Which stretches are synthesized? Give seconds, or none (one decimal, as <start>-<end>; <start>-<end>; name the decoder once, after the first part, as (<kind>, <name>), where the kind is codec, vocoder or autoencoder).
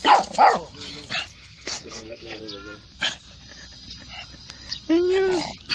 1.3-2.4 (codec, SNAC)